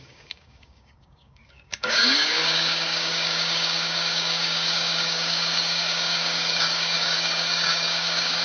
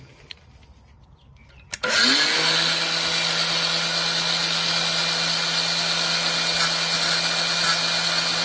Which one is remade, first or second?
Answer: first